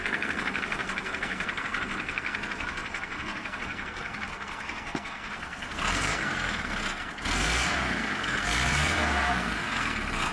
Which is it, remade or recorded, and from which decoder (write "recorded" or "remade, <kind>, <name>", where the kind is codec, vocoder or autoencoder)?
remade, codec, SNAC